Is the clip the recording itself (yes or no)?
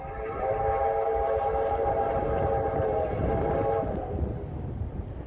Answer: yes